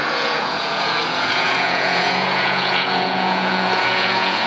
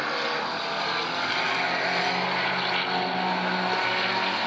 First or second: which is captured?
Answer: second